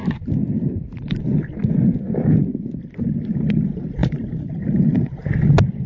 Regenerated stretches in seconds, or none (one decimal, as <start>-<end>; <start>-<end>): 4.0-5.3